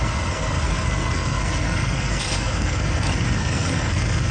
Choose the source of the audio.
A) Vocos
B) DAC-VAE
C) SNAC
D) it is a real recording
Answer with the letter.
C